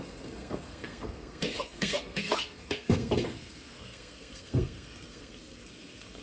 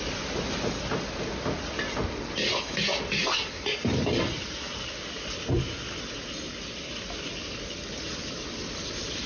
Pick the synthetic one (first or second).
first